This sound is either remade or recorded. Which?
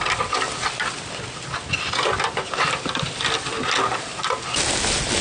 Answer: recorded